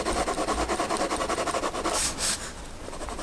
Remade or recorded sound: remade